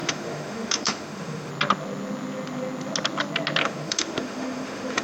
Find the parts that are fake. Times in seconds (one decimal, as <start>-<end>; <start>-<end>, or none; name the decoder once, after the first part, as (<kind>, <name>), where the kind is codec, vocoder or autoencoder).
0.0-1.5 (autoencoder, DAC-VAE); 3.6-5.0